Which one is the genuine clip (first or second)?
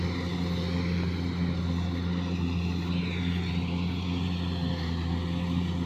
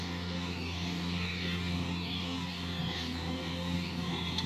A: first